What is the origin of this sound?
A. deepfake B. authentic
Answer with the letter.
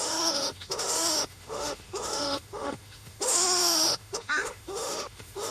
A